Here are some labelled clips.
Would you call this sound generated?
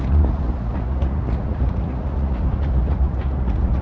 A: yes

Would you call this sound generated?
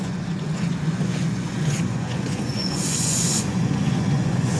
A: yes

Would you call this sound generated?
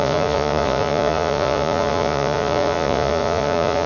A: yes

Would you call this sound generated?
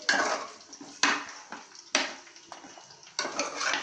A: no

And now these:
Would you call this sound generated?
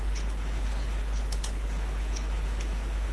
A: yes